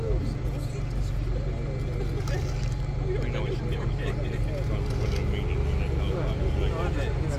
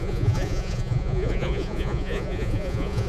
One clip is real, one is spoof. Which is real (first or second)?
first